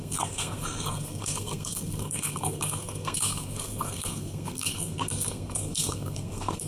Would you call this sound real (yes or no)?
no